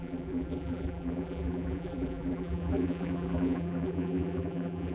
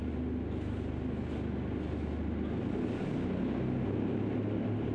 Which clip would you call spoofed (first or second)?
first